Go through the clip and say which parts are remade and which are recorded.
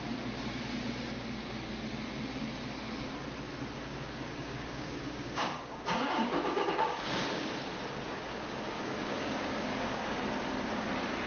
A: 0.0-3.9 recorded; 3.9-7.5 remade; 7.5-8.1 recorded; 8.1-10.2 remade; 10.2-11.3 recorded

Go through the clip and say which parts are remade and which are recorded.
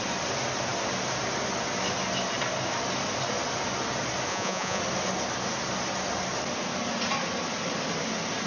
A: 0.0-4.3 recorded; 4.3-4.8 remade; 4.8-8.5 recorded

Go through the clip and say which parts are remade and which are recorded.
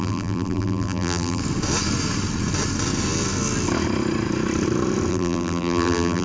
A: 0.0-1.4 remade; 1.4-5.1 recorded; 5.1-6.2 remade